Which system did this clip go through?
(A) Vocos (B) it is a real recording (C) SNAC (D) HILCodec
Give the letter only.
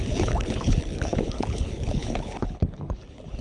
D